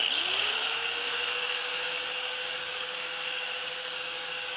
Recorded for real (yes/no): no